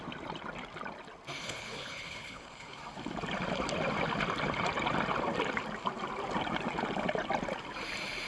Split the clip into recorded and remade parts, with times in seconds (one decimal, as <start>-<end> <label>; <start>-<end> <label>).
0.0-1.4 recorded; 1.4-2.8 remade; 2.8-8.3 recorded